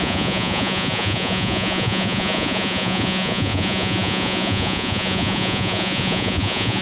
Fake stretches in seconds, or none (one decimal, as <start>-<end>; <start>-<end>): 0.0-6.8